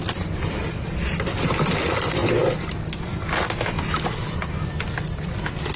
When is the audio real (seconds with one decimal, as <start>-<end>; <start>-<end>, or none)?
0.0-5.8